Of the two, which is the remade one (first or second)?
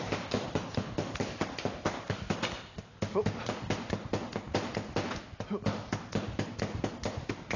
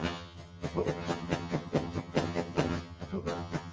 second